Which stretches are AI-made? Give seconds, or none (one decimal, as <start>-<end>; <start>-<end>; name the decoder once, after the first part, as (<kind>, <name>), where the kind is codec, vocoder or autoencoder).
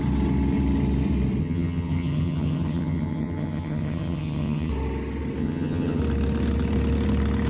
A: 1.4-4.7 (vocoder, HiFi-GAN); 5.4-6.0